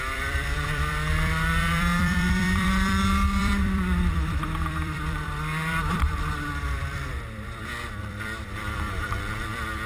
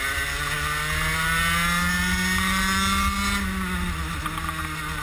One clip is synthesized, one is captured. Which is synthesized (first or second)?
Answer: first